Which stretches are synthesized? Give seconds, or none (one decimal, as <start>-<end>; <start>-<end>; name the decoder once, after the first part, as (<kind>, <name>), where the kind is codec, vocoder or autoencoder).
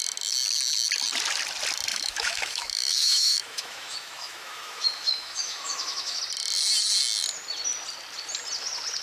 1.9-6.2 (autoencoder, DAC-VAE)